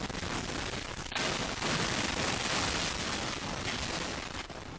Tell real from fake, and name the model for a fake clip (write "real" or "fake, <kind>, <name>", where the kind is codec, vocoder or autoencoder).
real